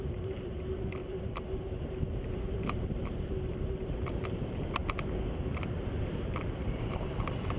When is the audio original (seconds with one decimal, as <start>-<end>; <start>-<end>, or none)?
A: 4.8-6.0